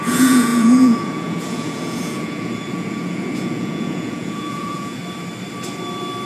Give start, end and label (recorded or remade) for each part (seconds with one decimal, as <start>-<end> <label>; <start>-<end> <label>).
0.0-5.0 remade; 5.0-6.3 recorded